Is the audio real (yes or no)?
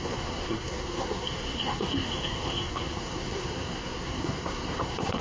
no